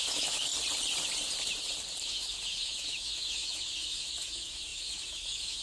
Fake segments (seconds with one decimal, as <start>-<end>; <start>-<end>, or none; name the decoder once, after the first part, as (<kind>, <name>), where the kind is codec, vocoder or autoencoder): 0.0-0.5 (autoencoder, DAC-VAE); 2.0-5.6